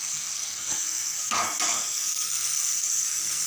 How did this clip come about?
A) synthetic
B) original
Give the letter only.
A